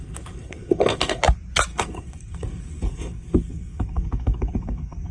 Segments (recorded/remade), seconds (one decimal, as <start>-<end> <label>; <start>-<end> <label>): 0.0-1.2 remade; 1.2-1.7 recorded; 1.7-5.1 remade